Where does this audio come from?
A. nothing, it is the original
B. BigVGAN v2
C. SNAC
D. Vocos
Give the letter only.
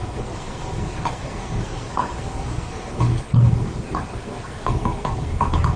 C